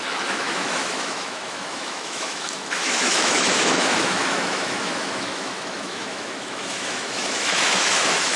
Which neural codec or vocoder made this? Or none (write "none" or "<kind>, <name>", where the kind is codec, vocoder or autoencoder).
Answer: autoencoder, DAC-VAE